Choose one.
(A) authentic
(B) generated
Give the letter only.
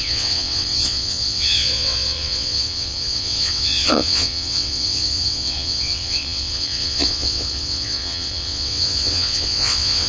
B